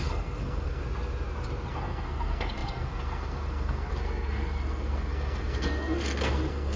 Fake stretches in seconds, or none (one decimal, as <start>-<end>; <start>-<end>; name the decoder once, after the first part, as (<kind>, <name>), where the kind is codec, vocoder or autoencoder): 0.0-0.8 (codec, SNAC); 1.7-6.8